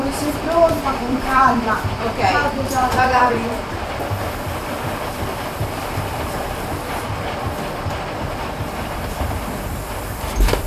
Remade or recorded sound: remade